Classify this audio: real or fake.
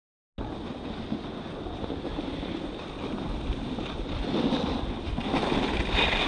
real